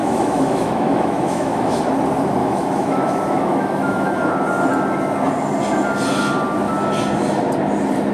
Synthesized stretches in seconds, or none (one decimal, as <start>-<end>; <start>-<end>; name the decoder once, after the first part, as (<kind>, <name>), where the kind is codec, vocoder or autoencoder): 0.0-1.8 (autoencoder, DAC-VAE); 2.4-4.3